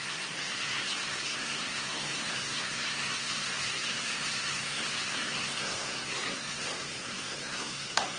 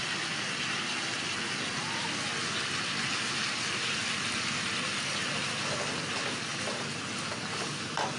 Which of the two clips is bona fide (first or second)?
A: second